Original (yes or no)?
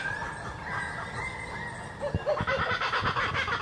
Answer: yes